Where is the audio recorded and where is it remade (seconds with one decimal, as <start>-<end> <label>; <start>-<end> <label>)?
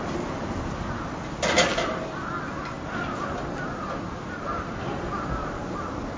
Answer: 0.0-6.2 recorded